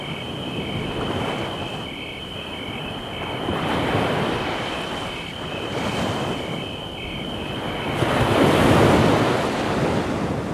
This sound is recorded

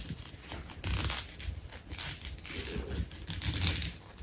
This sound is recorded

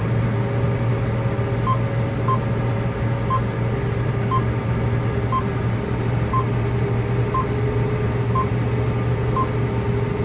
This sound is recorded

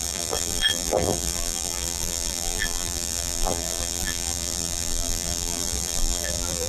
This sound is remade